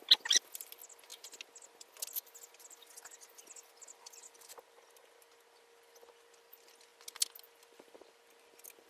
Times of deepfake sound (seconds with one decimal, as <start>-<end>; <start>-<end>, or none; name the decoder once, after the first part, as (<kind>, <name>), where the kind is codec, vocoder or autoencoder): none